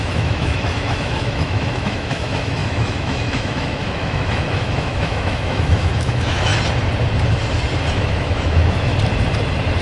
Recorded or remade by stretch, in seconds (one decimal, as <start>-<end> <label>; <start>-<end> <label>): 0.0-6.5 remade; 6.5-7.9 recorded; 7.9-8.9 remade; 8.9-9.8 recorded